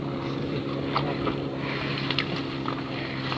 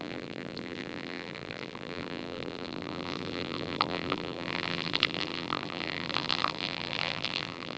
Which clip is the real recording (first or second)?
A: first